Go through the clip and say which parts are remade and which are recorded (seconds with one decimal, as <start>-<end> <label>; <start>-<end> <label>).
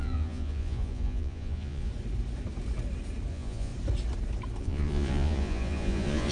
0.0-1.9 remade; 1.9-3.3 recorded; 3.3-3.7 remade; 3.7-4.6 recorded; 4.6-6.3 remade